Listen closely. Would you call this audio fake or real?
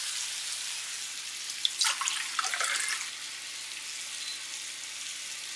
real